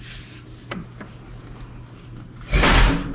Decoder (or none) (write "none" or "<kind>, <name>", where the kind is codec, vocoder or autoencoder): none